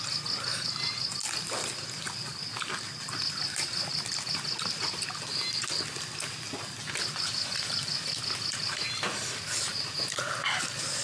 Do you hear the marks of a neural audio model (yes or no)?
no